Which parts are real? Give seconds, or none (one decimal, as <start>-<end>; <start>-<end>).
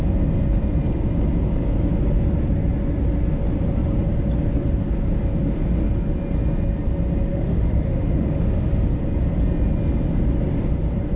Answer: 0.0-7.3; 8.7-11.2